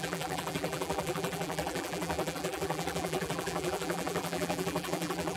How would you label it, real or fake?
fake